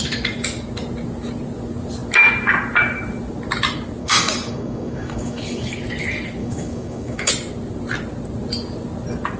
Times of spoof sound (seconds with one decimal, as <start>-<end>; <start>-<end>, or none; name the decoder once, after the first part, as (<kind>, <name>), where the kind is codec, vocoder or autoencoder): 4.0-5.7 (codec, DAC); 6.4-7.3